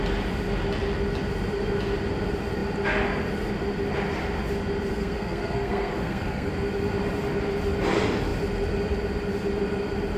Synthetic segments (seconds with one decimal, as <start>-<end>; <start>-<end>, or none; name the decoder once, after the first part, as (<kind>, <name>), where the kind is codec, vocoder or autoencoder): 4.9-6.5 (codec, SNAC)